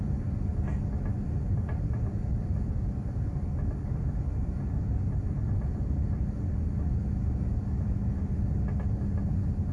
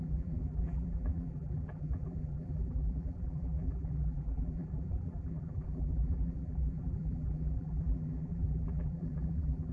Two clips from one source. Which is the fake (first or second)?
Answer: second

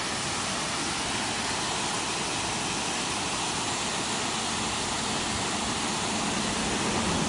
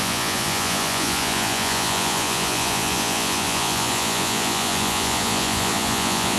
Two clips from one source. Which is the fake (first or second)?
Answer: second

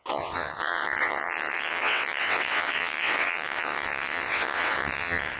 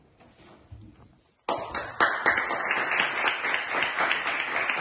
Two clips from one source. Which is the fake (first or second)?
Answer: first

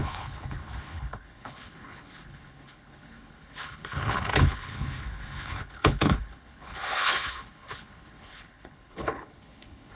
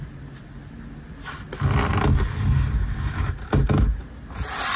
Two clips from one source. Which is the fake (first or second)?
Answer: first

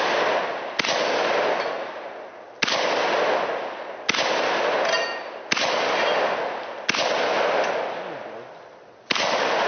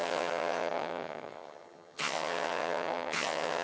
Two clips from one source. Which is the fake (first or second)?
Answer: second